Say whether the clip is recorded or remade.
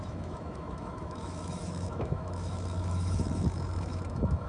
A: remade